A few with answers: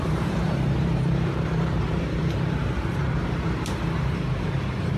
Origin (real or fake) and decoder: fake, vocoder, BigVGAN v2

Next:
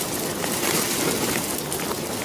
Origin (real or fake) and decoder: real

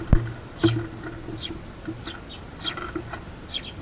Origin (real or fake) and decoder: real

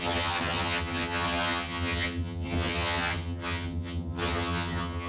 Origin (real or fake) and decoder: fake, vocoder, HiFi-GAN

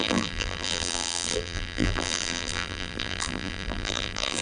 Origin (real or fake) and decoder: fake, vocoder, BigVGAN v2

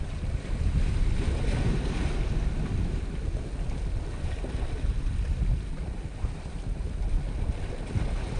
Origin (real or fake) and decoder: real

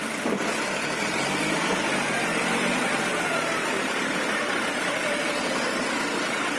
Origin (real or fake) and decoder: fake, vocoder, BigVGAN v2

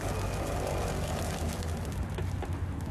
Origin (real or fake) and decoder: real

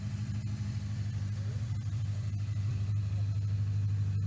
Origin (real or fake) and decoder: real